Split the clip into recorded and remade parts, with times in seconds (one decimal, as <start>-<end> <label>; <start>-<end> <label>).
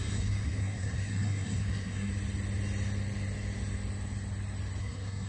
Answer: 0.0-2.1 remade; 2.1-4.8 recorded; 4.8-5.3 remade